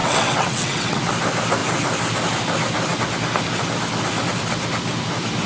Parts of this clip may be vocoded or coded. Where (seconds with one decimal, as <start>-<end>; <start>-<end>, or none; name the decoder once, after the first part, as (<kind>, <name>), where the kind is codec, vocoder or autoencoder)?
0.0-1.0 (vocoder, WaveNeXt)